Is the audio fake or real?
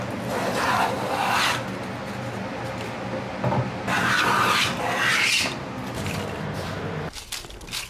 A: real